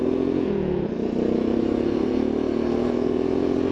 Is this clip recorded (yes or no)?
yes